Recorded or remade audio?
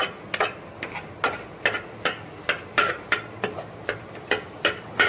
recorded